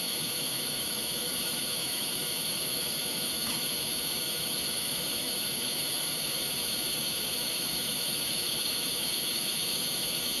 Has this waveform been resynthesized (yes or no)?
yes